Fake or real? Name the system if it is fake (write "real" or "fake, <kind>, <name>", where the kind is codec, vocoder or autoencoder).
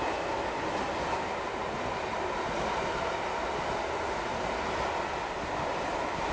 real